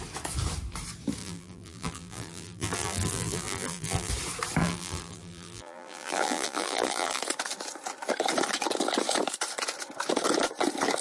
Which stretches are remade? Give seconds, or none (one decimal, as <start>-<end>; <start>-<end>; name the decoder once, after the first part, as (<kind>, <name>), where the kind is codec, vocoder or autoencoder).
1.2-4.1 (vocoder, BigVGAN v2); 4.6-7.2